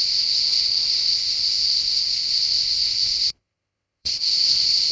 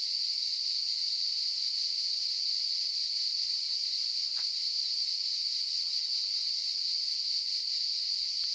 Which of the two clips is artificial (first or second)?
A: first